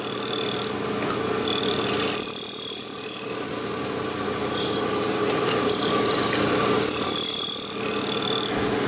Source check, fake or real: real